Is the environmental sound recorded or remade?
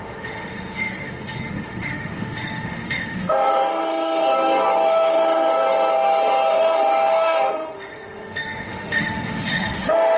remade